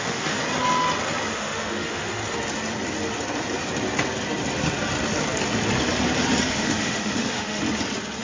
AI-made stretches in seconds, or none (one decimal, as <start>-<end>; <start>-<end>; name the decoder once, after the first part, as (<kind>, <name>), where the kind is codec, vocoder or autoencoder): 0.0-0.4 (autoencoder, DAC-VAE); 1.3-2.2; 6.5-7.6